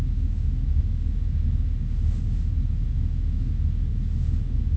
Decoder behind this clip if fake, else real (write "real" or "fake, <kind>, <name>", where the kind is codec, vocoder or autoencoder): fake, autoencoder, DAC-VAE